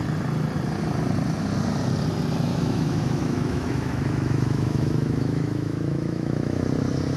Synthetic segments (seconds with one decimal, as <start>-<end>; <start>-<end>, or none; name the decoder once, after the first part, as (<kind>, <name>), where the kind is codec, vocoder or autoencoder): 2.5-6.7 (autoencoder, DAC-VAE)